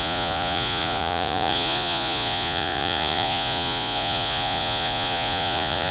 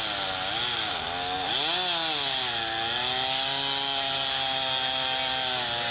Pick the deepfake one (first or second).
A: first